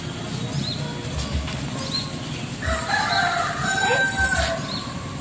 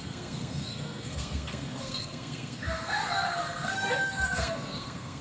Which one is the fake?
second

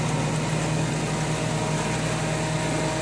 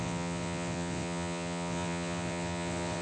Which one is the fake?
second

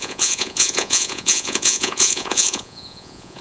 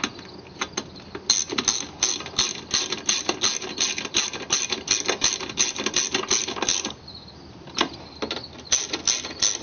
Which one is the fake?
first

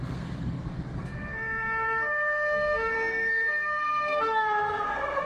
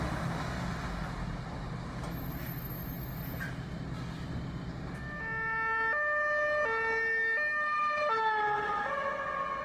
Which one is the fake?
first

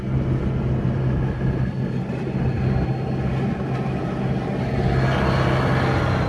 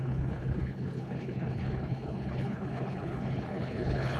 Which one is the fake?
second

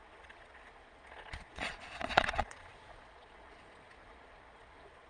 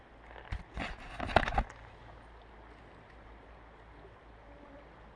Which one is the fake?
first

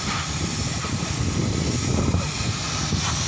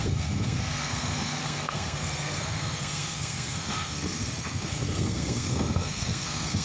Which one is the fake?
second